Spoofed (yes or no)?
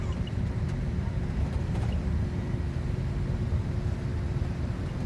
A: yes